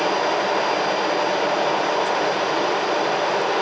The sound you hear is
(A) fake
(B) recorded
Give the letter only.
B